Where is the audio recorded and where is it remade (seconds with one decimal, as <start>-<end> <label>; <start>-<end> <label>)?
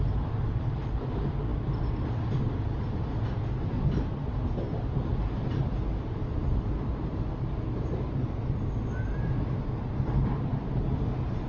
0.0-11.5 recorded